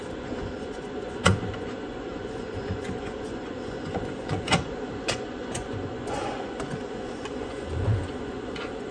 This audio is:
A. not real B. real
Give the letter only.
A